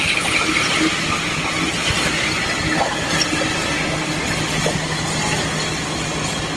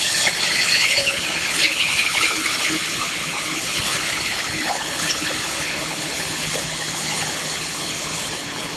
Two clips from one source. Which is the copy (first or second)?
second